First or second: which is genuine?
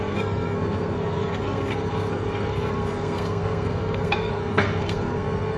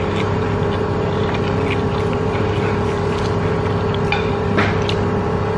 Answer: second